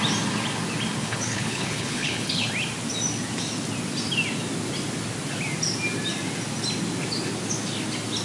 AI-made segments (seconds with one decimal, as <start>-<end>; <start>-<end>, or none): 1.0-2.5